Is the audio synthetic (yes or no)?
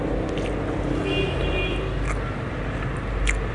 no